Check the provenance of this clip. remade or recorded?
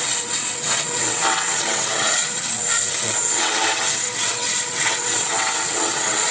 remade